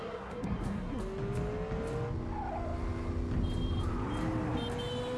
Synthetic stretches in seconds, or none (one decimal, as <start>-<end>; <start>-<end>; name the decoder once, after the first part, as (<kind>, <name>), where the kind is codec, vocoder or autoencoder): 0.0-1.0 (codec, SNAC)